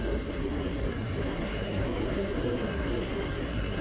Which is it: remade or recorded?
remade